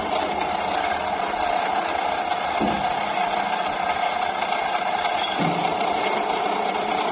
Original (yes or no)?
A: yes